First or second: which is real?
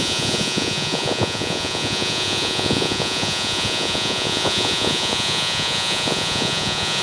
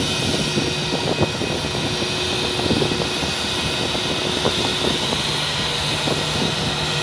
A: second